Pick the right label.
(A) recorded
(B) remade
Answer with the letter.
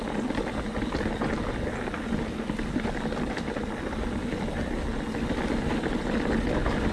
A